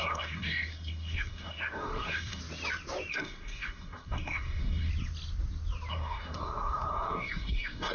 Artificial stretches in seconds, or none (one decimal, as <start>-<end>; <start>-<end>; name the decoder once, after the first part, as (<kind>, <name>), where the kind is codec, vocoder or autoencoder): 0.0-2.4 (codec, SNAC); 3.1-4.9; 5.9-7.9